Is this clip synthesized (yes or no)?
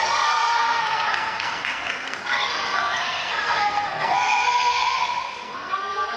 yes